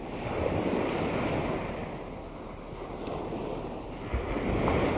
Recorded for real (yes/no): yes